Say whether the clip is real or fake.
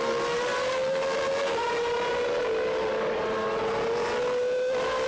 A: real